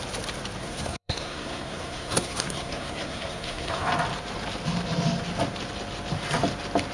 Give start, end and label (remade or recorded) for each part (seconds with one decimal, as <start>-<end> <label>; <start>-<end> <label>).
0.0-0.6 recorded; 0.6-3.9 remade; 3.9-6.9 recorded